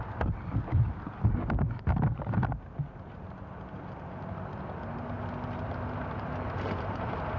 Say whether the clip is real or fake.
real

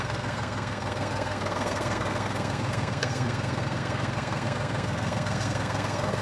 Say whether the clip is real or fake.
fake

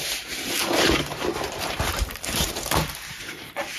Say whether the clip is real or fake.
fake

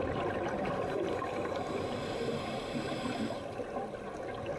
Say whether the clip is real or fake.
real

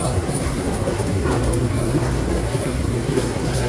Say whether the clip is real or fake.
fake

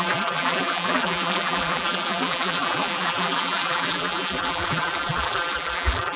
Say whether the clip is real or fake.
fake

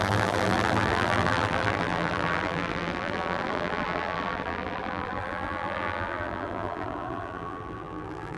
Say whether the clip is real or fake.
fake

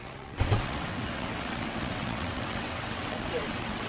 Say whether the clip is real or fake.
fake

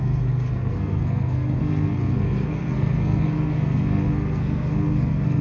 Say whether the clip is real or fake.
fake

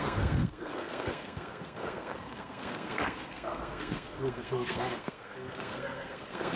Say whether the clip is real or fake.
fake